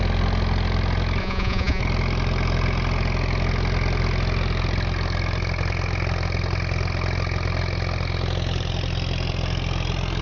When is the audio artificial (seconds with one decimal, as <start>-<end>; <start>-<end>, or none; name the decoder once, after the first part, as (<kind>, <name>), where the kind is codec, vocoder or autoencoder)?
1.2-1.8 (vocoder, Vocos)